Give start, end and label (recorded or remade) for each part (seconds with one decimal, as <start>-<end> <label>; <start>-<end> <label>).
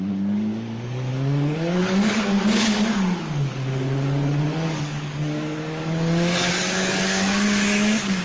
0.0-8.2 remade